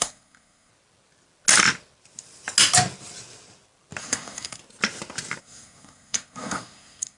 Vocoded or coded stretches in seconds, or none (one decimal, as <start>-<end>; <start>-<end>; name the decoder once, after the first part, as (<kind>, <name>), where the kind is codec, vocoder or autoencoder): 0.0-0.7 (codec, SNAC); 4.0-4.6; 5.4-7.2